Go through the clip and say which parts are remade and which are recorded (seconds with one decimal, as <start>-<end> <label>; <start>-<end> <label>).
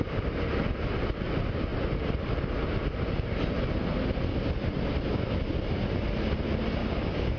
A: 0.0-6.8 recorded; 6.8-7.4 remade